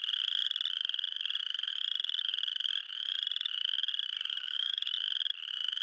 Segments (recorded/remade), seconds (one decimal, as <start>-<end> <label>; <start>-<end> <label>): 0.0-4.3 recorded; 4.3-4.9 remade; 4.9-5.8 recorded